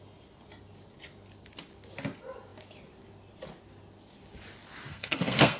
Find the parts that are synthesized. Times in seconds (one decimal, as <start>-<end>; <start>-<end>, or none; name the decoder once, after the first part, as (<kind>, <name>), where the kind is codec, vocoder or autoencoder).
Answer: 4.9-5.6 (codec, SNAC)